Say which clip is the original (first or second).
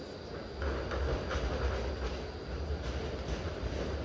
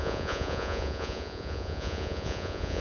first